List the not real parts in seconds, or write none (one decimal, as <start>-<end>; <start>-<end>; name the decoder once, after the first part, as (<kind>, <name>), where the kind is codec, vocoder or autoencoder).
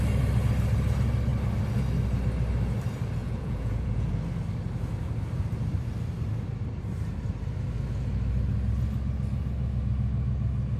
3.2-4.1 (vocoder, Vocos)